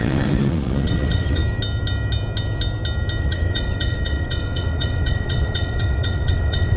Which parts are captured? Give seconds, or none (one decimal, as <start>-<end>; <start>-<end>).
1.4-3.2